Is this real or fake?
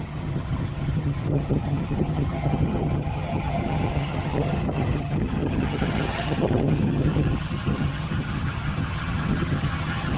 fake